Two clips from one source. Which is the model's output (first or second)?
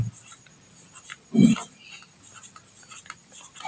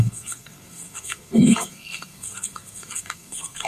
second